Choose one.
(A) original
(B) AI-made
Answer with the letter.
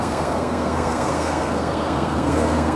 B